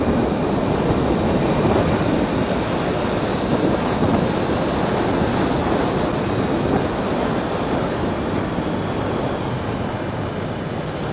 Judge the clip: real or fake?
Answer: real